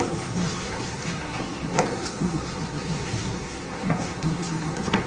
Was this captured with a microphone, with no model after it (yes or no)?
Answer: no